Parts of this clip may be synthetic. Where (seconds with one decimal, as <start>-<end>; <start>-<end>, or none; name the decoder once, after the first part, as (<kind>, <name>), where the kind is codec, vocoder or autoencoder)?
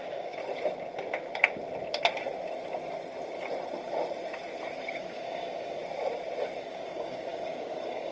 0.0-0.4 (codec, DAC); 4.9-5.8; 6.6-8.1